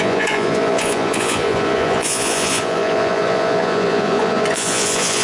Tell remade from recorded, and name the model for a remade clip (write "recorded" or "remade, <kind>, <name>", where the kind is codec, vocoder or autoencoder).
remade, vocoder, Vocos